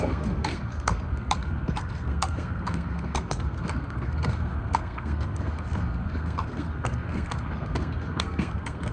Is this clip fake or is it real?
fake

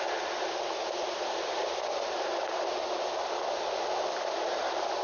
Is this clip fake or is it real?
real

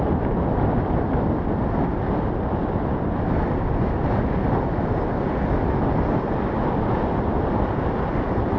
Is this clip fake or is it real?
real